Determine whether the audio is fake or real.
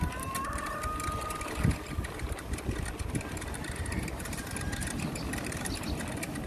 real